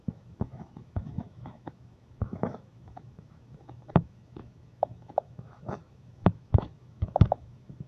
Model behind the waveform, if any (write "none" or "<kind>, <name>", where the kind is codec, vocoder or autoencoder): autoencoder, DAC-VAE